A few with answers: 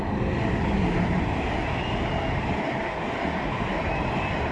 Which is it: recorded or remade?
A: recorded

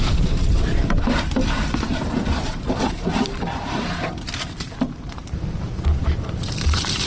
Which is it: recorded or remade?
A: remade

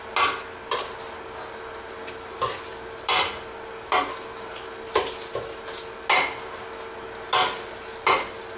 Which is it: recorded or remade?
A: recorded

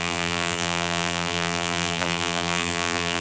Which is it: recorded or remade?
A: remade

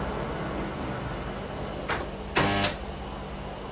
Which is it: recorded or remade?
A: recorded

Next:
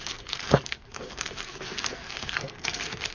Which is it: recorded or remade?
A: remade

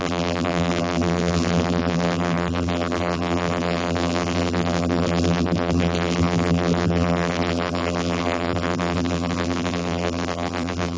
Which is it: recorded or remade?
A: remade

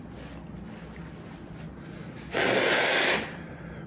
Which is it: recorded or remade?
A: recorded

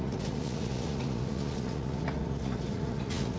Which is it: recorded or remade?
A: remade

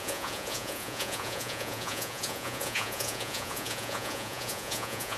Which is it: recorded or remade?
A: remade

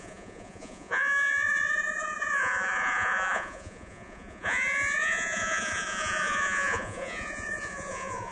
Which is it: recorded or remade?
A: remade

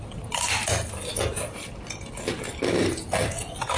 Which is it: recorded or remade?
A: recorded